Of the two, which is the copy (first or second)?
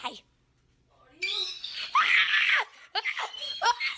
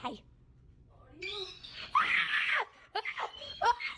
second